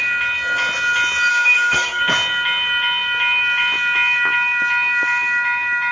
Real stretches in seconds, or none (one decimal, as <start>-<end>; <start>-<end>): 0.0-1.3; 2.0-5.9